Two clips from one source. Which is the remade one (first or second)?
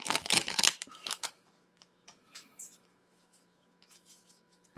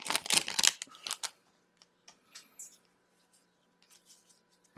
first